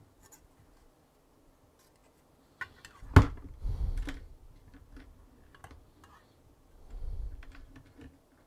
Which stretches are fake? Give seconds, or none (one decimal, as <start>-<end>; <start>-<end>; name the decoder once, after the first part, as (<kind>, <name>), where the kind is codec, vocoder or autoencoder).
none